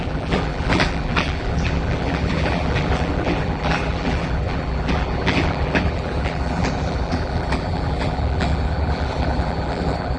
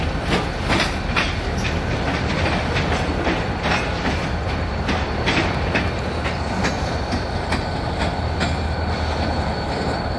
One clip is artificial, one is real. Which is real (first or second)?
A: second